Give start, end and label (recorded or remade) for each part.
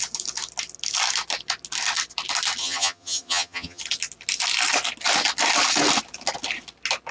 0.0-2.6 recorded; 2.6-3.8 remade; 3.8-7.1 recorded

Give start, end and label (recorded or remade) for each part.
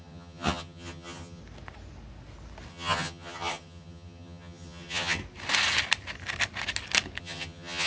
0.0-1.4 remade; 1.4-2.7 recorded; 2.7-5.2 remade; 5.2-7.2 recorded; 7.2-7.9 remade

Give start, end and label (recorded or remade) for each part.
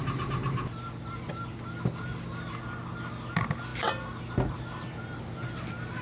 0.0-6.0 recorded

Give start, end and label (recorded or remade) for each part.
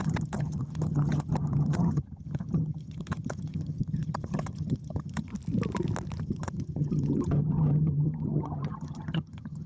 0.0-5.3 remade; 5.3-6.2 recorded; 6.2-9.7 remade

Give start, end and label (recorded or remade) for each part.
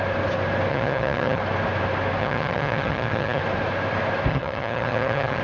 0.0-0.7 recorded; 0.7-1.4 remade; 1.4-2.2 recorded; 2.2-3.4 remade; 3.4-4.3 recorded; 4.3-5.4 remade